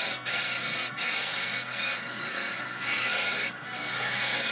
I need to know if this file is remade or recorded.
remade